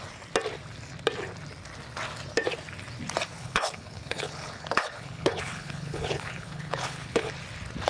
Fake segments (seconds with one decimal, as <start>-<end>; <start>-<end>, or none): 3.3-7.3